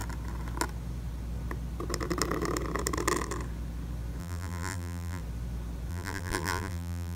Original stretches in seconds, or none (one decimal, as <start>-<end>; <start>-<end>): 0.0-4.2; 5.2-5.9